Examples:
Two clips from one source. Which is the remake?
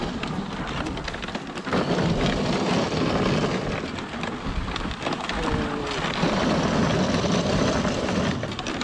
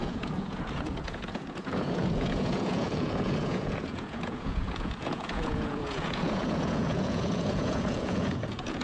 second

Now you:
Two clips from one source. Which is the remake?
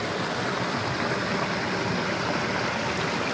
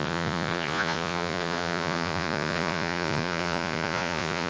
second